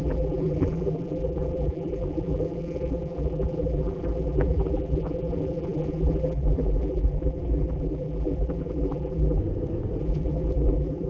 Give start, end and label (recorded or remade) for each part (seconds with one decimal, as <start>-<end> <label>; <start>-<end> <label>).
0.0-9.4 remade; 9.4-10.0 recorded; 10.0-11.1 remade